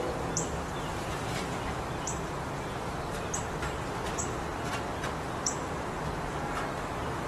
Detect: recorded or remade remade